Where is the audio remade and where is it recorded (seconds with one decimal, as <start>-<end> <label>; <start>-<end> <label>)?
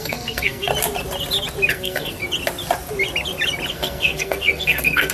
0.0-0.7 remade; 0.7-1.7 recorded; 1.7-2.2 remade; 2.2-3.7 recorded; 3.7-5.1 remade